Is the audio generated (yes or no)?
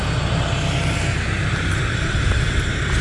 no